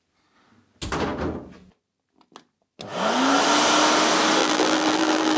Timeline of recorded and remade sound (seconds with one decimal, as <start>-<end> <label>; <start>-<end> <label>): 0.0-4.4 recorded; 4.4-5.4 remade